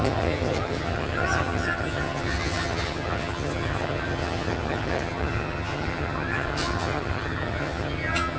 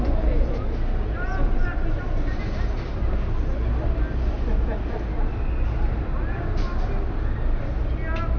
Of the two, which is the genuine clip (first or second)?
second